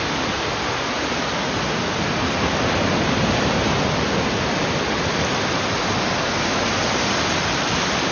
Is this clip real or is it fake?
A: real